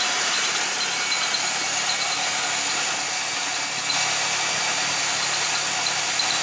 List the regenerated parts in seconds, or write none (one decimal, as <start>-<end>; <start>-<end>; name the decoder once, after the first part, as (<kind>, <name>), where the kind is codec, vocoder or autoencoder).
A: none